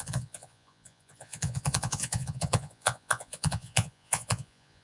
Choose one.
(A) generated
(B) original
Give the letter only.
A